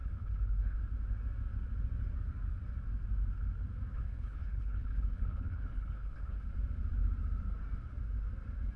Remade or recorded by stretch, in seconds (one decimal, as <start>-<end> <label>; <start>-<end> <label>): 0.0-0.8 remade; 0.8-3.9 recorded; 3.9-6.5 remade; 6.5-8.8 recorded